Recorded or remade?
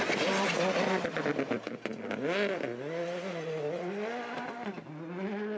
recorded